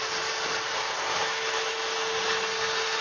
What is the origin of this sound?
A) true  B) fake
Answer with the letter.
A